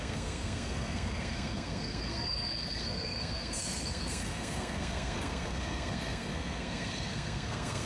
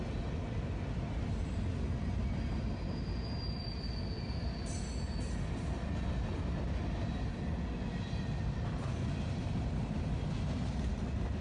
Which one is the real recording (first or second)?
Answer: second